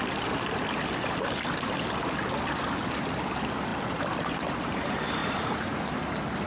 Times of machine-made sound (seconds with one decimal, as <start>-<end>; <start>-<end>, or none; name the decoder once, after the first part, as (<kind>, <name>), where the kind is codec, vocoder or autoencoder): 5.2-5.8 (vocoder, Vocos)